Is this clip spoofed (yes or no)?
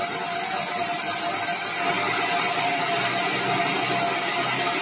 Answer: no